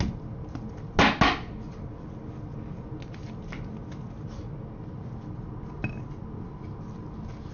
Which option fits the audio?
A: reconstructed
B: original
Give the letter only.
B